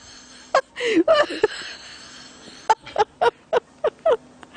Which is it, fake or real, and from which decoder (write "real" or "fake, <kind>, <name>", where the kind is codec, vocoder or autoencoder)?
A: real